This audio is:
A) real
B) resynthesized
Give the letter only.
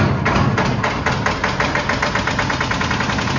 A